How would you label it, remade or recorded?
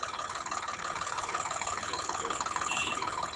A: remade